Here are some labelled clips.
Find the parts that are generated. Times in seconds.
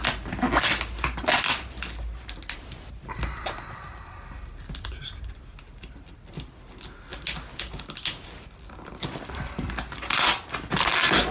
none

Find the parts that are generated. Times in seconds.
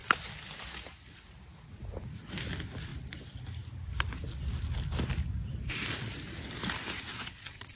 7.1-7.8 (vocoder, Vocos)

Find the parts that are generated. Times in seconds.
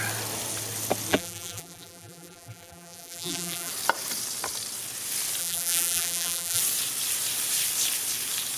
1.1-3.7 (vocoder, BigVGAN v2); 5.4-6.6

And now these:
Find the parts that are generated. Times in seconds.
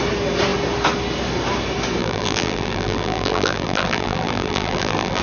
2.0-5.2 (vocoder, BigVGAN v2)